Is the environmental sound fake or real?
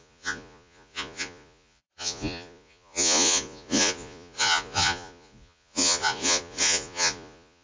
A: fake